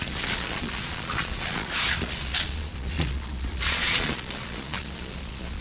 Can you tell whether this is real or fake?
fake